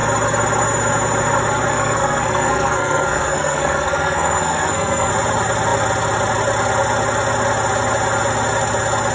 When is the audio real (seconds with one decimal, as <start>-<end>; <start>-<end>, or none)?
0.0-1.7; 5.1-9.1